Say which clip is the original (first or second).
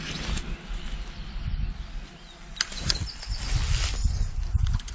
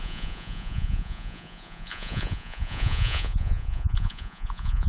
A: first